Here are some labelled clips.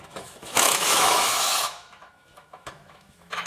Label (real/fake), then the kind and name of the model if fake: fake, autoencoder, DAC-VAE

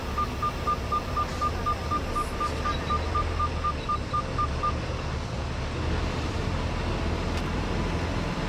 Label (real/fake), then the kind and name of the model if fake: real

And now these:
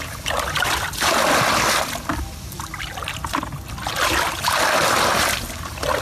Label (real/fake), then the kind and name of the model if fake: real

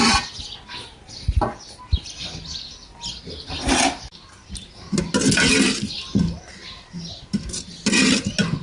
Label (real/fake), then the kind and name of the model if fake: real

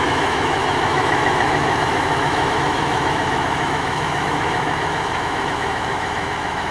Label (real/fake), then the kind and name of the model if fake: fake, autoencoder, DAC-VAE